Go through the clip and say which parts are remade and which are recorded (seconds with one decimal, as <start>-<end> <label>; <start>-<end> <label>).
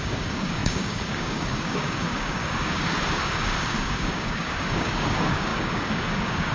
0.0-6.5 remade